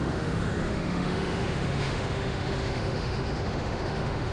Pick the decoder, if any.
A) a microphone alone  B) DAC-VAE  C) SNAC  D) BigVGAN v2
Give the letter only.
B